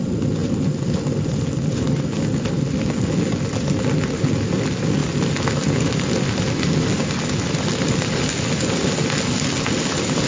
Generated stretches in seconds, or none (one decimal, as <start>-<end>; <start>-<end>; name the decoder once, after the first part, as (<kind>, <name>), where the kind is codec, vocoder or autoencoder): none